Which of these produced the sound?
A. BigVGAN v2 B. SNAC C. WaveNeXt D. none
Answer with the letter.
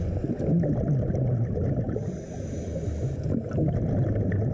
D